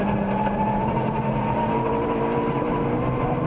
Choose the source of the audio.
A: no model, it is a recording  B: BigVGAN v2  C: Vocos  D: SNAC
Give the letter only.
B